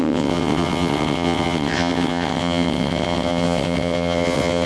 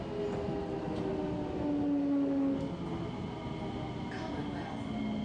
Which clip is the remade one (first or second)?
first